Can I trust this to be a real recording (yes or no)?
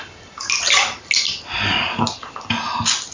yes